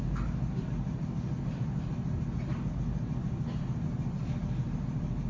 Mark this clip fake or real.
real